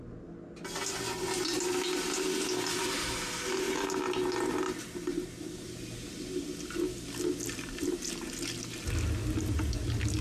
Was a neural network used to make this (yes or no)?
no